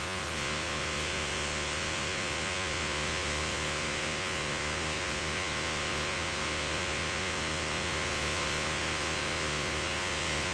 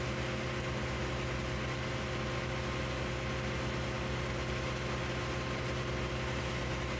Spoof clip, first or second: first